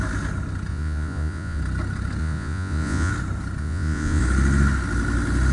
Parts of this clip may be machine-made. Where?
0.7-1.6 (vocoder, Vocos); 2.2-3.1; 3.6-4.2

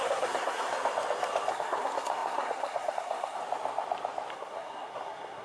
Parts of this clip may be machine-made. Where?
0.0-0.7 (codec, SNAC); 1.5-3.4; 4.3-5.4

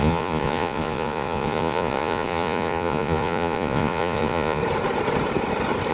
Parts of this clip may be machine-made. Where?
0.0-4.6 (vocoder, Vocos)